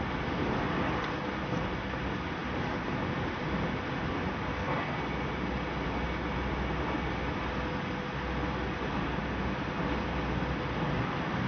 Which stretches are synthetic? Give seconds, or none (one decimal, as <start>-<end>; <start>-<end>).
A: 4.5-5.0